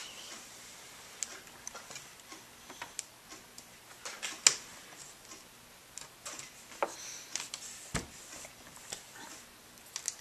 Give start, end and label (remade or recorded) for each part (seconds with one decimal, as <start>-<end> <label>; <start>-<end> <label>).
0.0-10.2 recorded